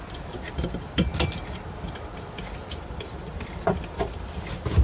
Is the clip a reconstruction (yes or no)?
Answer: no